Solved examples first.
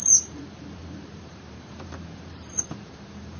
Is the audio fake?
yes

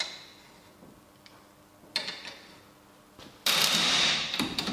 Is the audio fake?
no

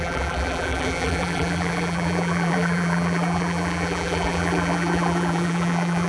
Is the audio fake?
yes